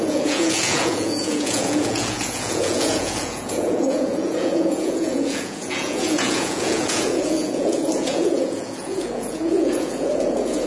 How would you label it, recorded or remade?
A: remade